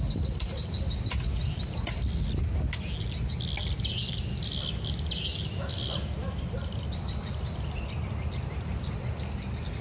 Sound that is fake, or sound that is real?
real